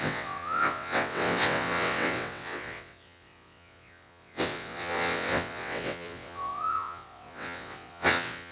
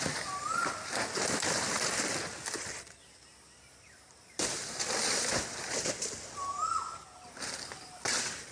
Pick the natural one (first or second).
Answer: second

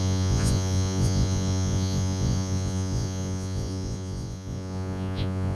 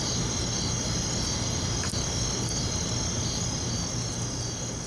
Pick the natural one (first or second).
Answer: second